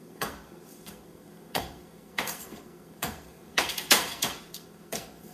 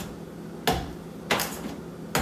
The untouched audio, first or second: second